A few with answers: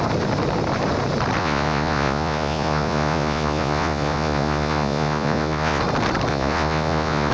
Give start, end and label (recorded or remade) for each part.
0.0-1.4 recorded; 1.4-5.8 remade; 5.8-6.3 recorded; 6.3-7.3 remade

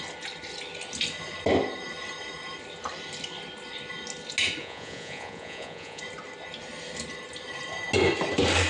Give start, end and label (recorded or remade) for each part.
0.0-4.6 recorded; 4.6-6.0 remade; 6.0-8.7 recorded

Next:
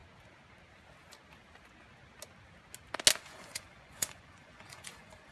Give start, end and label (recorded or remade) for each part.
0.0-3.2 recorded; 3.2-5.3 remade

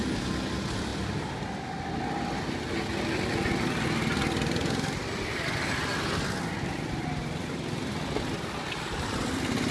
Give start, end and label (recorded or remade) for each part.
0.0-9.7 recorded

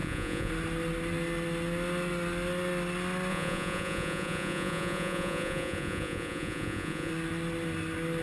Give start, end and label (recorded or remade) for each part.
0.0-0.5 remade; 0.5-3.3 recorded; 3.3-7.1 remade; 7.1-8.2 recorded

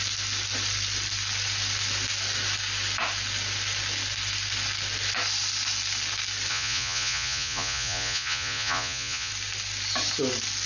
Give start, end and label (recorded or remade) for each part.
0.0-6.5 recorded; 6.5-9.3 remade; 9.3-10.7 recorded

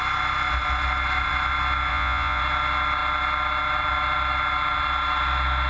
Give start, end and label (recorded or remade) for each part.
0.0-1.9 recorded; 1.9-2.4 remade; 2.4-5.7 recorded